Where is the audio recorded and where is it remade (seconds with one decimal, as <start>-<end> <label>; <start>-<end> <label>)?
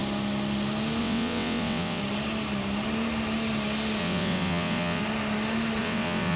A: 0.0-1.0 recorded; 1.0-2.0 remade; 2.0-4.0 recorded; 4.0-5.0 remade; 5.0-5.8 recorded; 5.8-6.4 remade